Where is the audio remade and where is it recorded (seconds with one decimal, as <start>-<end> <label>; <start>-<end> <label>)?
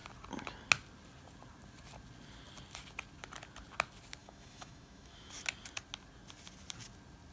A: 0.0-4.2 recorded; 4.2-5.3 remade; 5.3-7.3 recorded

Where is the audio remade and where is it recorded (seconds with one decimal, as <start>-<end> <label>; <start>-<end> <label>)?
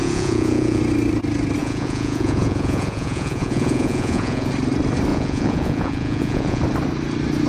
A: 0.0-0.8 remade; 0.8-1.6 recorded; 1.6-4.5 remade; 4.5-5.1 recorded; 5.1-6.6 remade; 6.6-7.5 recorded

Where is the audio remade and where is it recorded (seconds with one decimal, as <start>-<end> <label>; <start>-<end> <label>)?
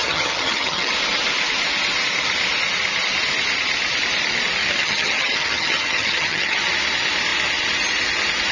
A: 0.0-0.9 remade; 0.9-4.6 recorded; 4.6-6.6 remade; 6.6-8.5 recorded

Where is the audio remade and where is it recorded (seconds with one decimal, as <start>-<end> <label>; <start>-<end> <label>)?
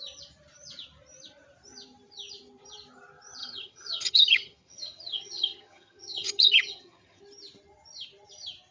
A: 0.0-3.4 recorded; 3.4-7.2 remade; 7.2-8.7 recorded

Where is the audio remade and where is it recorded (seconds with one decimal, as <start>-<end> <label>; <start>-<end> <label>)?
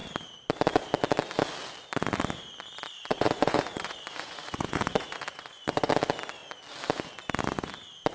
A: 0.0-3.1 recorded; 3.1-5.9 remade; 5.9-8.1 recorded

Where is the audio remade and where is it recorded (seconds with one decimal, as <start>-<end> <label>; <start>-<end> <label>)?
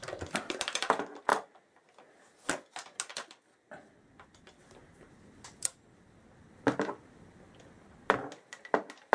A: 0.0-9.1 recorded